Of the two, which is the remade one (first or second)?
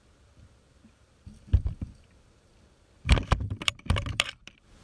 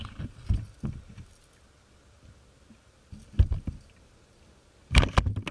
first